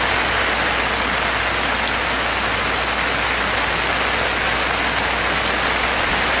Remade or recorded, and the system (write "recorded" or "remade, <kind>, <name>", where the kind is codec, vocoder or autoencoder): recorded